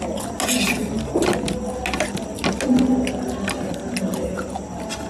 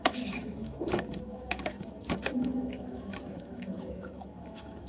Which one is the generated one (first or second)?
second